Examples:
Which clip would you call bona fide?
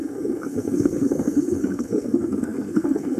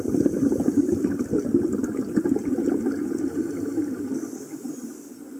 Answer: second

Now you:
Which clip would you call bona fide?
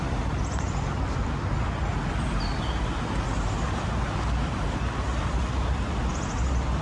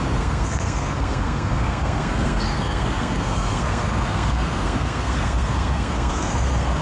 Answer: first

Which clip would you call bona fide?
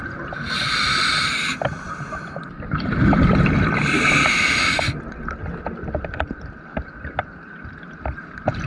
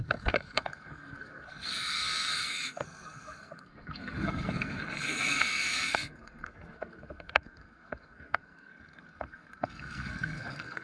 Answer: first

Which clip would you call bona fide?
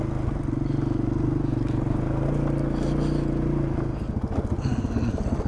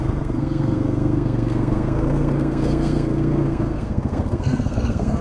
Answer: first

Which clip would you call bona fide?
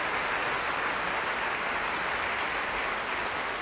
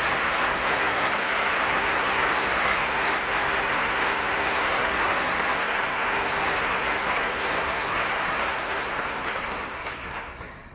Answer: first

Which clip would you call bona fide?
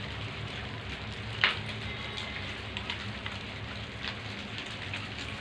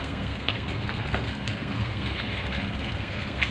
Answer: first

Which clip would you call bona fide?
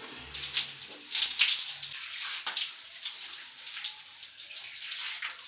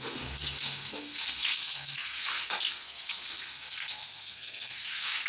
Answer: first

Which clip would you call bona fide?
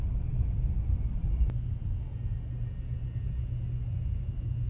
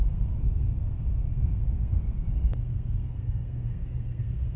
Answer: first